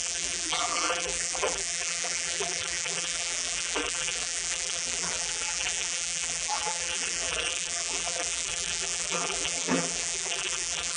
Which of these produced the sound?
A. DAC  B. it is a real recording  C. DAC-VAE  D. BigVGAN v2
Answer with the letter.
D